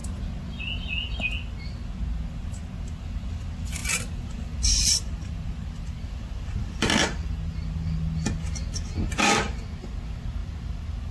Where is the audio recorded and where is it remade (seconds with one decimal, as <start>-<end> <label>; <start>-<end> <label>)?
0.0-3.8 recorded; 3.8-7.4 remade; 7.4-10.4 recorded; 10.4-11.1 remade